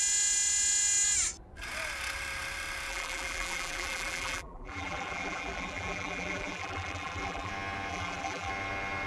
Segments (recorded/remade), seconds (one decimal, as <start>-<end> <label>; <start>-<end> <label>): 0.0-2.9 recorded; 2.9-7.5 remade; 7.5-7.9 recorded; 7.9-8.5 remade; 8.5-9.1 recorded